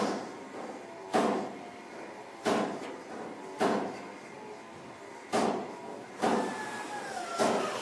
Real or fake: real